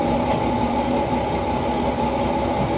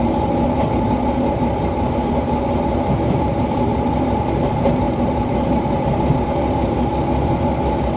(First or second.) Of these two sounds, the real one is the first